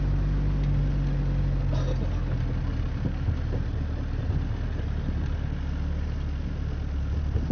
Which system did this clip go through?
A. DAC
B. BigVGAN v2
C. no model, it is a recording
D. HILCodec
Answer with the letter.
C